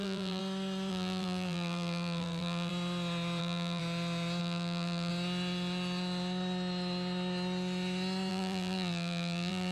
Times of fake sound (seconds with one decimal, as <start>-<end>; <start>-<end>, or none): 0.0-0.4; 0.9-2.7; 3.4-3.8; 4.4-5.1; 8.3-9.7